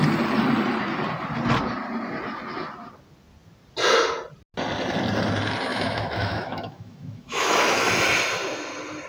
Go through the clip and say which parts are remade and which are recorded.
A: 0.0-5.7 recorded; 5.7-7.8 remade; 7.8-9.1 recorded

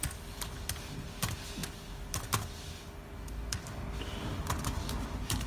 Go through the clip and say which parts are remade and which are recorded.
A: 0.0-5.5 recorded

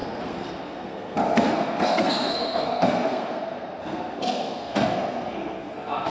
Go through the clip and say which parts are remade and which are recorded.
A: 0.0-6.1 remade